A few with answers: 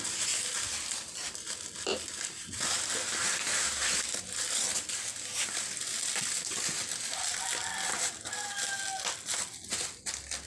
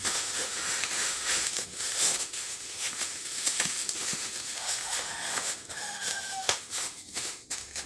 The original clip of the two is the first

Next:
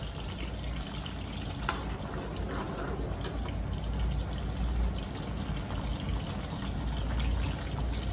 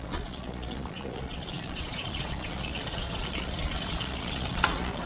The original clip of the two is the first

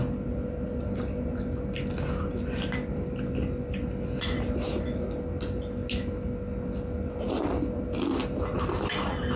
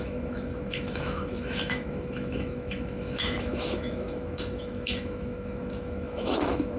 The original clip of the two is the first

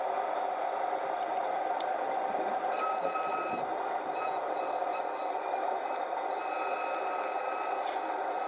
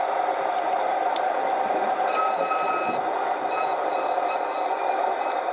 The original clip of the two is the second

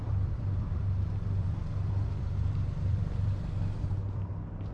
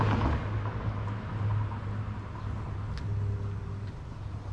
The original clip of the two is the second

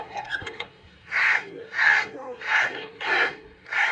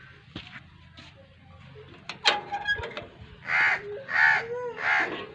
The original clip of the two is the second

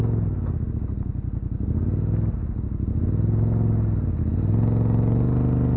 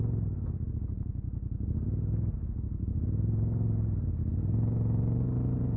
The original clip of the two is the first